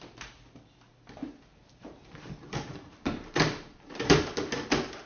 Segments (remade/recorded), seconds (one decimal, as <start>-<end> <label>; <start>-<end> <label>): 0.0-1.2 recorded; 1.2-4.3 remade; 4.3-5.1 recorded